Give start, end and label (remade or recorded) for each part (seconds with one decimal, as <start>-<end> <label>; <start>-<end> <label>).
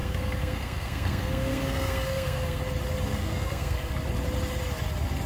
0.0-2.6 remade; 2.6-3.2 recorded; 3.2-3.9 remade; 3.9-5.3 recorded